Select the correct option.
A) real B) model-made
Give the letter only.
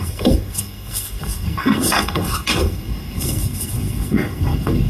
B